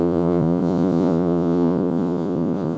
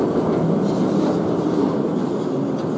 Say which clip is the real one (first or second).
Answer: second